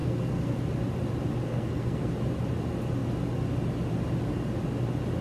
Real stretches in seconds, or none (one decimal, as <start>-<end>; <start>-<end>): 0.6-1.5; 2.1-5.2

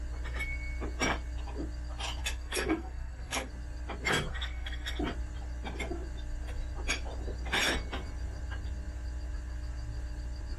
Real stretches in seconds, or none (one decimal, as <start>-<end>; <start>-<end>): 0.0-2.2; 3.5-4.3; 5.0-10.6